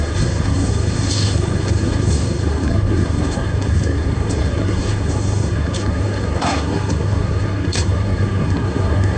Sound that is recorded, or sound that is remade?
remade